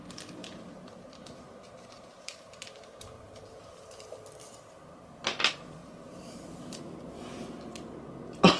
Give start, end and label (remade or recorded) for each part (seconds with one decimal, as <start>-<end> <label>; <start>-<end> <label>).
0.0-0.4 recorded; 0.4-4.1 remade; 4.1-5.8 recorded; 5.8-6.6 remade; 6.6-8.6 recorded